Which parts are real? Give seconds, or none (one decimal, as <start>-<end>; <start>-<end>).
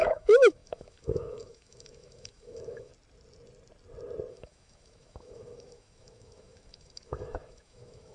2.9-4.3